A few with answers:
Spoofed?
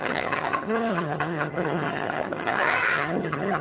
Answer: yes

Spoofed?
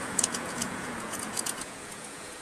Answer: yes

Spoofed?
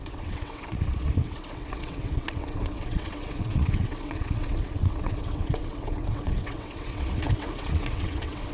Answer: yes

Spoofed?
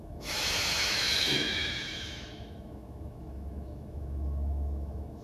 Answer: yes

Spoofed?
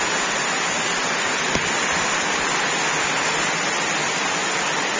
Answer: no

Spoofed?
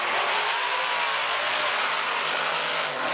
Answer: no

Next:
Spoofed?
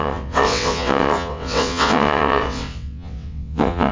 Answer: yes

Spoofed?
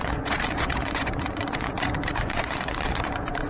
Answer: yes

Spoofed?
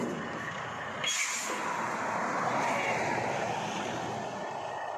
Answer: no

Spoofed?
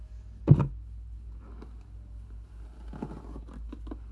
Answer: no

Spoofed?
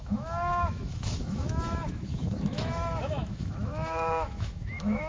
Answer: yes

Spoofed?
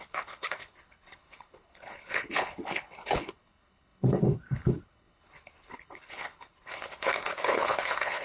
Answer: yes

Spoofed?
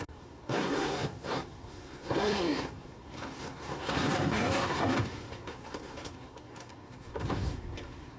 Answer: yes